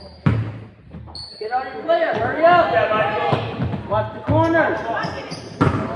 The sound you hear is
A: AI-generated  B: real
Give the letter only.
B